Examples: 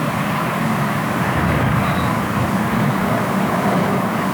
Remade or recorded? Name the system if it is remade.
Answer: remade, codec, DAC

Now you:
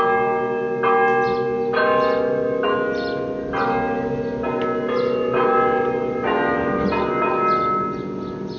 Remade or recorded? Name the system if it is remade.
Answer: recorded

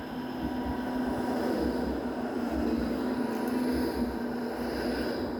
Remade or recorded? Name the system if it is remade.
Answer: recorded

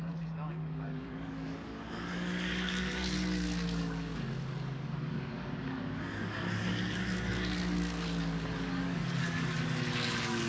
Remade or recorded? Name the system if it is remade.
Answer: remade, codec, DAC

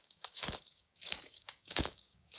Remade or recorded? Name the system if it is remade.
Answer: remade, codec, DAC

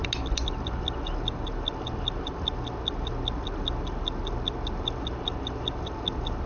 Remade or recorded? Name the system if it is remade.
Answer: recorded